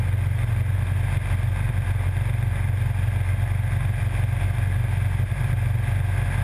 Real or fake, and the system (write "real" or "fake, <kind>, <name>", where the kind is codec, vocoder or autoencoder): real